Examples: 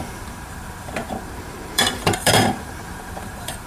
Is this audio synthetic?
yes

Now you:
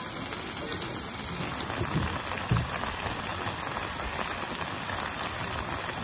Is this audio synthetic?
no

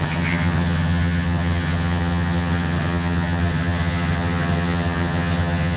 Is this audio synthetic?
yes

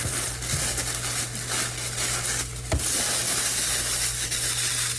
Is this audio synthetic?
no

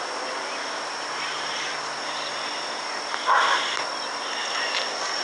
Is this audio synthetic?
no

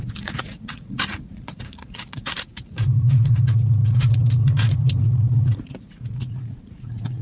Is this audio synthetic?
yes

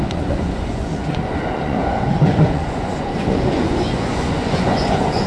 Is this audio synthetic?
yes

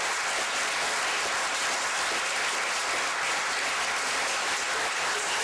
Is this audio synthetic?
no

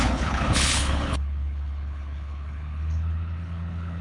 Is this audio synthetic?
yes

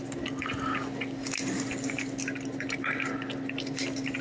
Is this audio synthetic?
no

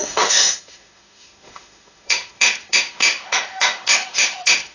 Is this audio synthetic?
yes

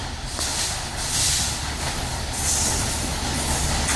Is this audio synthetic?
no